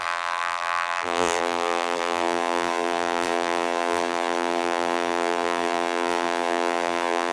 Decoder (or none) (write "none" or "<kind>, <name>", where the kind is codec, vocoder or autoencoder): vocoder, BigVGAN v2